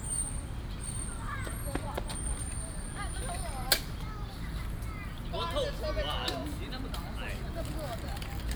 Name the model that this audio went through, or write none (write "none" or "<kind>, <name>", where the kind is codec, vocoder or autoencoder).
none